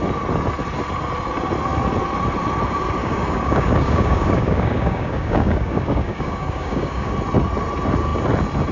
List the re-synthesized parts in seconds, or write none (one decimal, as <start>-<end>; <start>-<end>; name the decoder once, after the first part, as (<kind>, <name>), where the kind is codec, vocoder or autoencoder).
3.0-7.1 (codec, DAC)